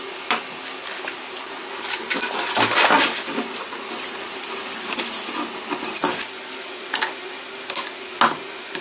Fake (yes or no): no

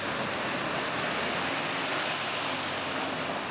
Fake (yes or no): no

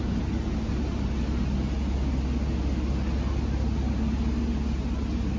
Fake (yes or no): no